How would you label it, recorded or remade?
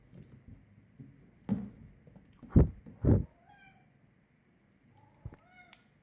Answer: recorded